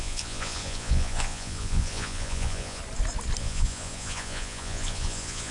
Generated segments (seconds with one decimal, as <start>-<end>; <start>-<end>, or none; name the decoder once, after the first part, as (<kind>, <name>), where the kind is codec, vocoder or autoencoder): 0.0-2.8 (vocoder, Vocos); 3.4-5.5